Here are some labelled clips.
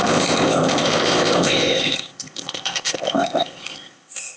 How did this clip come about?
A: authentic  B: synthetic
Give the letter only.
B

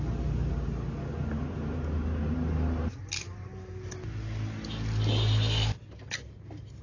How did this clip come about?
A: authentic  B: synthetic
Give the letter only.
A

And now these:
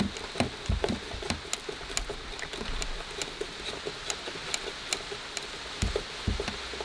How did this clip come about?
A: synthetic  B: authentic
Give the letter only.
B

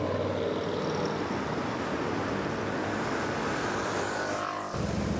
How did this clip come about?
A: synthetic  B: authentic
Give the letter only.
B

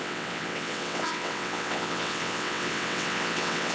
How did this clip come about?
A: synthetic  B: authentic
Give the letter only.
A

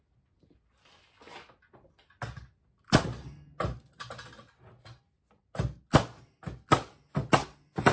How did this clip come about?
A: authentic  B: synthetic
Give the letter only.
A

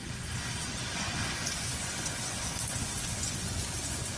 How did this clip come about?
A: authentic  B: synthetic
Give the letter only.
B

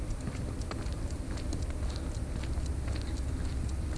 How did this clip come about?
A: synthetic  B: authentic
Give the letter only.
B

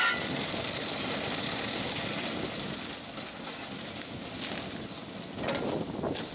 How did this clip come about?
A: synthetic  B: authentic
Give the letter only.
B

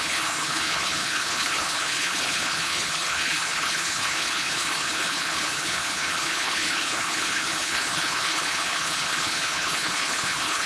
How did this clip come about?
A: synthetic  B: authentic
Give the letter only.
A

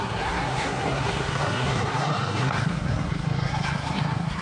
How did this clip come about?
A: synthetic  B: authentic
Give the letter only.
A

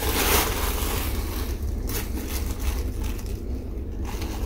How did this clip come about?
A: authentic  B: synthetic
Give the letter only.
A